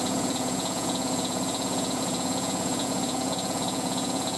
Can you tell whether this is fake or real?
fake